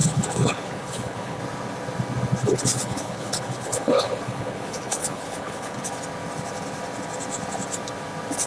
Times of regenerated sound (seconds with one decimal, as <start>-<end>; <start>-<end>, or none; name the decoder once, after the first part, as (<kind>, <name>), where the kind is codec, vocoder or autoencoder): 0.0-1.4 (codec, HILCodec); 2.4-5.9